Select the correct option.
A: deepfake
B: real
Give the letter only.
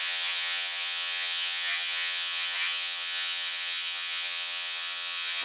A